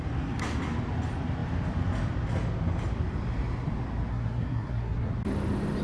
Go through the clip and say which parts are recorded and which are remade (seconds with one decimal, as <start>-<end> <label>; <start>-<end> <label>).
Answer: 0.0-4.1 recorded; 4.1-5.1 remade; 5.1-5.8 recorded